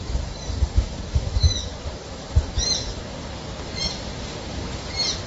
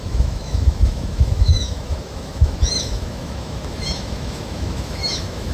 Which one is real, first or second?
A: first